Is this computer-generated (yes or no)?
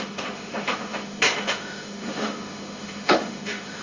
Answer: yes